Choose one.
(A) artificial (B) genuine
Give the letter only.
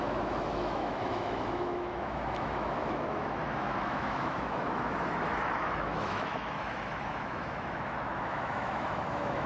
A